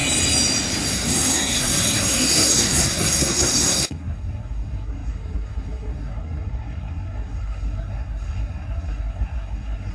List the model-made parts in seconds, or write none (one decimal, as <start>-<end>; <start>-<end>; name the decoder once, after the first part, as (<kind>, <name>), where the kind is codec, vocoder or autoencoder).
0.9-9.9 (codec, SNAC)